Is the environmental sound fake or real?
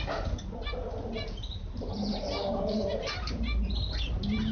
real